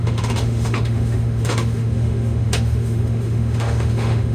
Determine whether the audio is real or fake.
fake